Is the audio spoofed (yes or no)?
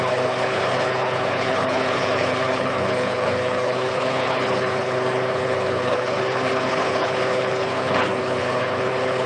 yes